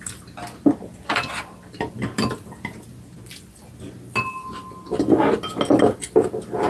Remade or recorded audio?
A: recorded